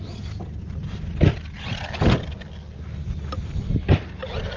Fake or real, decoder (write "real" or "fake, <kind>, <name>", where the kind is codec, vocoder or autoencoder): real